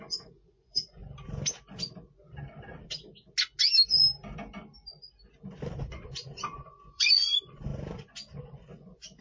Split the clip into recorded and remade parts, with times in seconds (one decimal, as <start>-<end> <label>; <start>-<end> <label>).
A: 0.0-1.0 remade; 1.0-5.8 recorded; 5.8-7.7 remade; 7.7-8.4 recorded; 8.4-9.2 remade